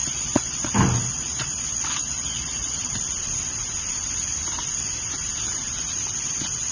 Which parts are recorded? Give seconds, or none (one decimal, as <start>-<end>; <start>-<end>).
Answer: 0.7-1.1; 2.9-6.7